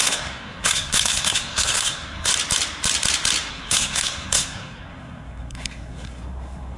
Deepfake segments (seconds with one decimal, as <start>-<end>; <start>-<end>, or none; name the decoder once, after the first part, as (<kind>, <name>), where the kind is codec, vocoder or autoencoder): 0.0-2.3 (codec, SNAC); 3.5-6.8